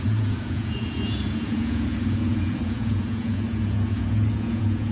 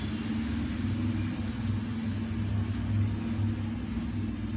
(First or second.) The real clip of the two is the second